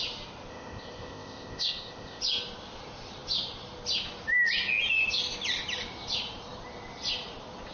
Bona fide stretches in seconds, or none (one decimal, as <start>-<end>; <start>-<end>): 0.0-0.5; 2.2-7.7

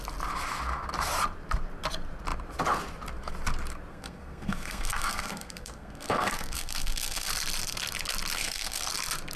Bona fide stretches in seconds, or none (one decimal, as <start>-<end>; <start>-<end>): 0.0-3.9; 7.3-8.4; 8.9-9.4

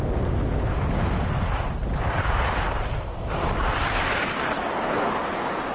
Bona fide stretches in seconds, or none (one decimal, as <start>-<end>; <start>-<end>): 0.0-1.8; 5.2-5.7